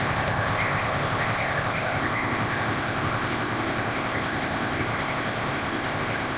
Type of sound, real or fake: fake